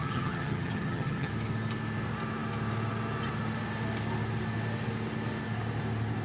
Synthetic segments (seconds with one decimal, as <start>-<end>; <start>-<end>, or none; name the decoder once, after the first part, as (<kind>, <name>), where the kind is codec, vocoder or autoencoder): 0.0-1.3 (vocoder, HiFi-GAN)